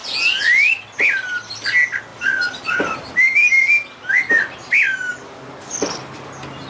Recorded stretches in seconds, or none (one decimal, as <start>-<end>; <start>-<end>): 0.0-5.1; 5.7-6.7

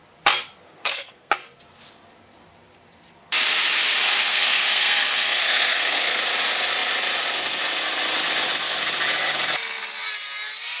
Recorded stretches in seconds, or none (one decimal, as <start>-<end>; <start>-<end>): 0.0-0.7; 1.3-4.3; 6.2-10.8

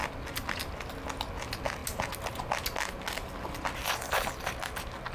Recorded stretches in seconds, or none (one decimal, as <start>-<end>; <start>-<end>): 0.0-5.1

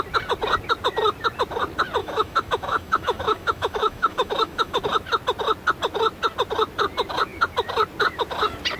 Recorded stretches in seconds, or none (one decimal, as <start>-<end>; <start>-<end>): 0.0-2.0; 4.8-8.8

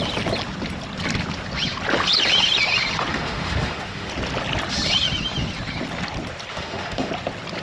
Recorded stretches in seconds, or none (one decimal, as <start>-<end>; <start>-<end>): 0.0-3.1; 4.1-6.5; 7.1-7.6

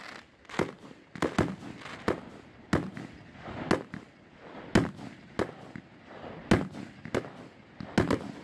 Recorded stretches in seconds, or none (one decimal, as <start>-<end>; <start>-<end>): 0.0-8.4

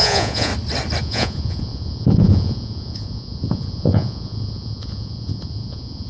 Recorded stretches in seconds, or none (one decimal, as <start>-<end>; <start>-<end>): 0.5-1.0

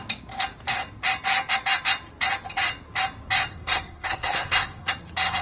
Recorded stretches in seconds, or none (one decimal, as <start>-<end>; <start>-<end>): 0.0-3.5; 4.9-5.4